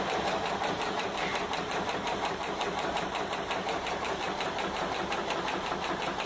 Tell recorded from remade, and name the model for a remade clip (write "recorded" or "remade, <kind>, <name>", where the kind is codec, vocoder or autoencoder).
remade, vocoder, BigVGAN v2